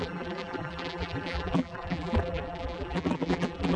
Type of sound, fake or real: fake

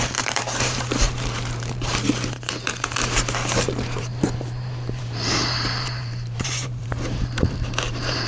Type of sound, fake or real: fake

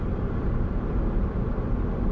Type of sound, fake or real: fake